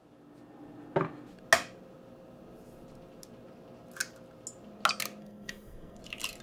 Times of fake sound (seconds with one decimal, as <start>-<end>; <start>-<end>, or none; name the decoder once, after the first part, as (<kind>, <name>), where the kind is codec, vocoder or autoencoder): 5.2-6.0 (codec, SNAC)